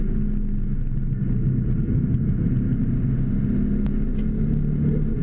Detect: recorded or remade recorded